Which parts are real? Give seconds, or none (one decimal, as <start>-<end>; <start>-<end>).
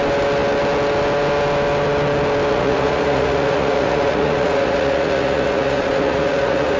0.0-2.5